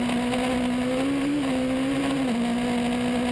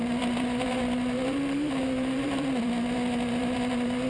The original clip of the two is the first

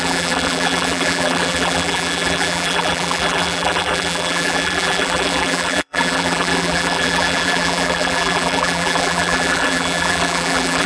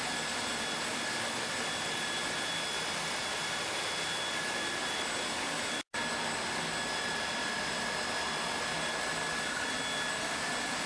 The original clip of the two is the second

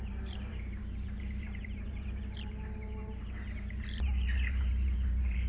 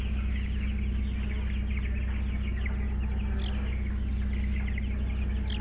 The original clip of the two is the second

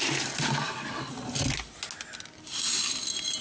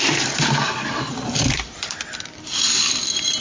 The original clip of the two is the first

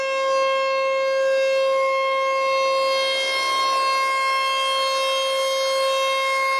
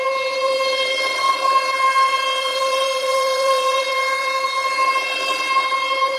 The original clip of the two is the first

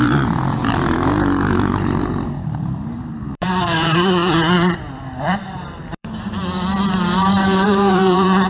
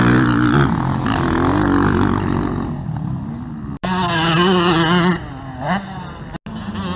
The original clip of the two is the second